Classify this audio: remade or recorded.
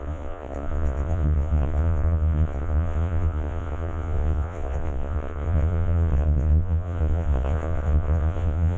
remade